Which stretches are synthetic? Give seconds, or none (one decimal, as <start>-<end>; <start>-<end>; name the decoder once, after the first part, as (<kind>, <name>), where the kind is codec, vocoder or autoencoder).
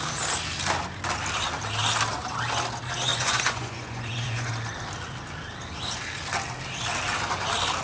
3.1-4.5 (vocoder, Vocos)